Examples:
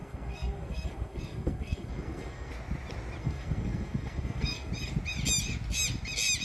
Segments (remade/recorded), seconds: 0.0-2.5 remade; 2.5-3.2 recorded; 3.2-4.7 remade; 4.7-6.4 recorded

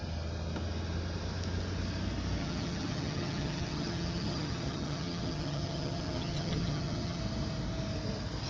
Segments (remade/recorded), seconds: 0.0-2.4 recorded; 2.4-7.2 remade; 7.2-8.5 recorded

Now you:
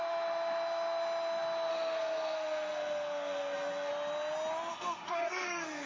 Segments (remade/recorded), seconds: 0.0-1.7 recorded; 1.7-3.9 remade; 3.9-4.7 recorded; 4.7-5.9 remade

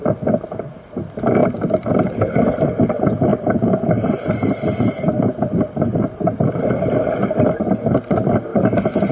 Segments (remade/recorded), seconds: 0.0-1.4 recorded; 1.4-2.7 remade; 2.7-3.3 recorded; 3.3-6.4 remade; 6.4-9.1 recorded